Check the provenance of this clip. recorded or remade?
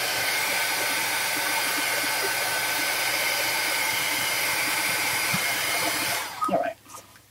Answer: remade